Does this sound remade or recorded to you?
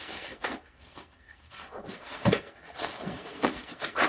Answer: remade